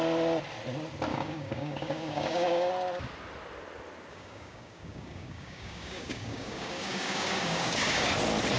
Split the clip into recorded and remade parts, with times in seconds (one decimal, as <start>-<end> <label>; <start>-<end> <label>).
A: 0.0-1.1 recorded; 1.1-2.7 remade; 2.7-4.1 recorded; 4.1-8.1 remade; 8.1-8.6 recorded

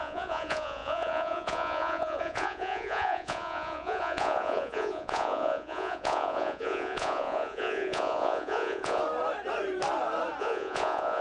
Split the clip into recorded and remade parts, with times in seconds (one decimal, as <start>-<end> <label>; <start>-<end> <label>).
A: 0.0-9.0 remade; 9.0-10.4 recorded; 10.4-11.2 remade

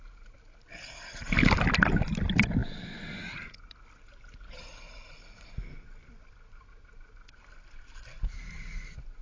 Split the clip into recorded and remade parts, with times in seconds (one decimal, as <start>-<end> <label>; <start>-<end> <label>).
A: 0.0-9.2 recorded

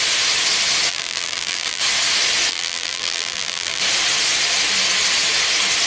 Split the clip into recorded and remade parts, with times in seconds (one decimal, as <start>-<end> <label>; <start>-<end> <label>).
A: 0.0-0.9 recorded; 0.9-1.8 remade; 1.8-2.5 recorded; 2.5-3.8 remade; 3.8-5.9 recorded

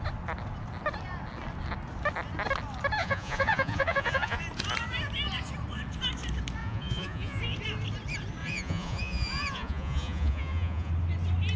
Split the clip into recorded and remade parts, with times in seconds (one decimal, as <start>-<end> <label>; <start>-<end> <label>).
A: 0.0-3.0 recorded; 3.0-4.4 remade; 4.4-6.6 recorded; 6.6-7.4 remade; 7.4-8.4 recorded; 8.4-10.9 remade; 10.9-11.6 recorded